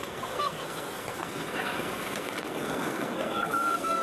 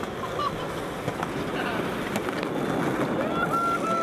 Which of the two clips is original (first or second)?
second